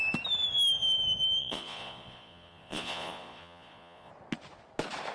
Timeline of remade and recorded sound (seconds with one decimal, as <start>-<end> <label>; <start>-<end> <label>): 0.0-1.4 recorded; 1.4-4.1 remade; 4.1-5.1 recorded